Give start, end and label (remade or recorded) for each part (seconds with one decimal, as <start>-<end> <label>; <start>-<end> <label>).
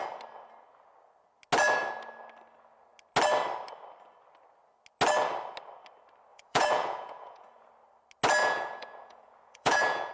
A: 0.0-6.3 recorded; 6.3-7.7 remade; 7.7-8.4 recorded; 8.4-10.1 remade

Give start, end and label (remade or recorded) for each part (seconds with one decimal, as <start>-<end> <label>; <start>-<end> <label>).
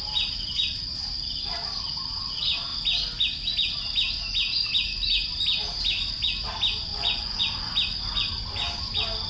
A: 0.0-6.9 recorded; 6.9-7.4 remade; 7.4-9.3 recorded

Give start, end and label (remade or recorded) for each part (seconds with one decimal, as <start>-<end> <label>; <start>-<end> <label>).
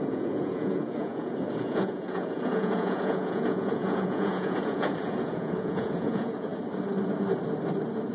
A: 0.0-6.5 remade; 6.5-8.1 recorded